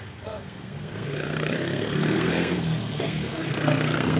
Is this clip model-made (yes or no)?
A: yes